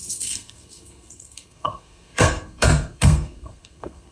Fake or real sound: fake